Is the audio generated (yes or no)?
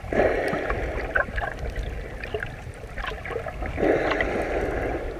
no